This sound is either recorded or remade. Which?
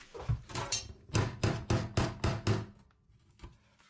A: recorded